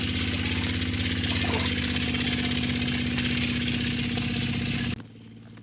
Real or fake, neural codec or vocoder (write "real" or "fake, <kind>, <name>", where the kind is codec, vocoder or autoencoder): real